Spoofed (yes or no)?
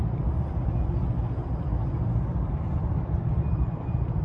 no